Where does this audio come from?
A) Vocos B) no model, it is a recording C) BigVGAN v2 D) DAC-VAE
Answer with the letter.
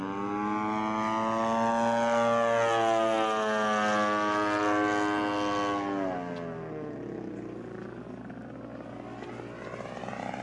B